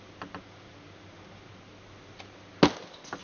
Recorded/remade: recorded